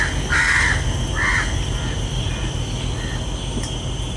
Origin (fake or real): real